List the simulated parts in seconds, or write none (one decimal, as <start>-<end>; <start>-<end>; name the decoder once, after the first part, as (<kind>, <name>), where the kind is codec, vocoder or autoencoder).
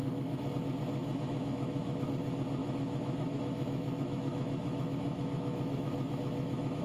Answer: 0.0-0.5 (autoencoder, DAC-VAE); 1.0-2.1; 2.6-6.8